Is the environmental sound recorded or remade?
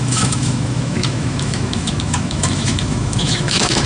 remade